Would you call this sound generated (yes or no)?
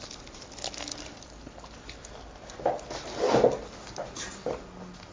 no